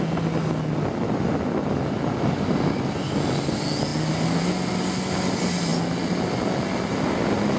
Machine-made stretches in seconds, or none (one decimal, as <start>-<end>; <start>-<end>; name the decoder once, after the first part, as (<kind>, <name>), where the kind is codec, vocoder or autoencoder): none